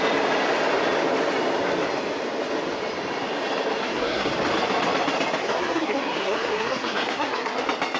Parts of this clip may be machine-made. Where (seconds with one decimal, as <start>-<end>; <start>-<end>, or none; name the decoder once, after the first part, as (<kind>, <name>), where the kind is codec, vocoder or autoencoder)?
3.8-4.3 (codec, SNAC); 5.4-7.6